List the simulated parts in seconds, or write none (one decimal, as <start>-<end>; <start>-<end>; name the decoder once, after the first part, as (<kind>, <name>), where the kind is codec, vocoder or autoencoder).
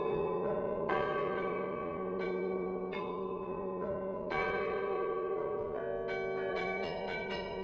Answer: 0.0-5.8 (vocoder, Vocos); 6.5-7.6